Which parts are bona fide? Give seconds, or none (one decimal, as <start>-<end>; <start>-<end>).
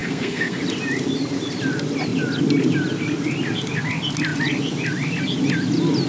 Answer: 0.6-6.1